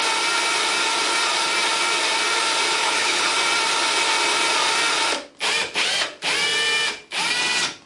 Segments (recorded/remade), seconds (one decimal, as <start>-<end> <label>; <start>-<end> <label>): 0.0-2.8 recorded; 2.8-3.3 remade; 3.3-7.9 recorded